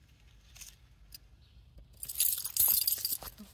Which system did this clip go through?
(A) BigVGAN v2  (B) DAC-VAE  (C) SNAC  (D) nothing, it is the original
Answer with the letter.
D